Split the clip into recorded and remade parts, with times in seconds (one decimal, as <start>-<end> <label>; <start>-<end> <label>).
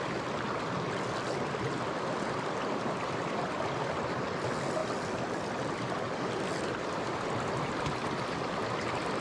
0.0-9.2 recorded